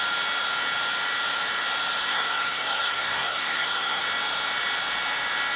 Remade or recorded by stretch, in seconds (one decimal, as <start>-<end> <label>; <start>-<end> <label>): 0.0-2.0 recorded; 2.0-4.0 remade; 4.0-5.6 recorded